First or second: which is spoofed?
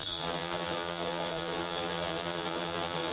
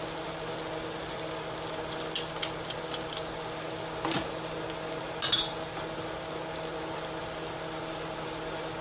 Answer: first